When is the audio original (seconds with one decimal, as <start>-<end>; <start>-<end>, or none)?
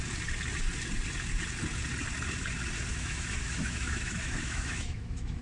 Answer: 0.0-2.9